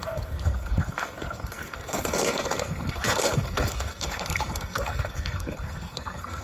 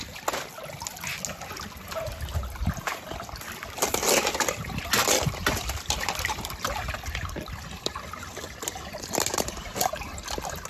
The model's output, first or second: first